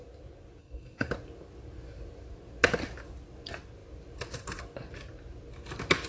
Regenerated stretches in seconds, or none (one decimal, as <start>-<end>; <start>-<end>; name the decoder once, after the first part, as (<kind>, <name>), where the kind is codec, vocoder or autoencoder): 0.6-1.1 (codec, SNAC)